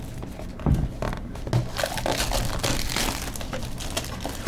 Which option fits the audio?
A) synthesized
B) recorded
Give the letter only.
B